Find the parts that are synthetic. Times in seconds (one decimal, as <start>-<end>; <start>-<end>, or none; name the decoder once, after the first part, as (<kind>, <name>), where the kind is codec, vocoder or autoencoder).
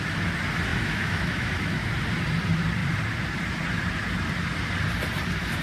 0.7-1.9 (autoencoder, DAC-VAE)